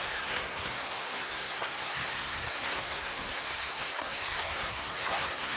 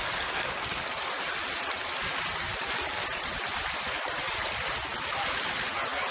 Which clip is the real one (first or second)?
second